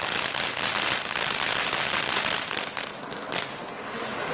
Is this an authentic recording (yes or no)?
yes